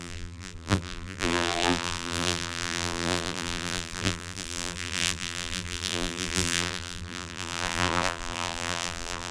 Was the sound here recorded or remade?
remade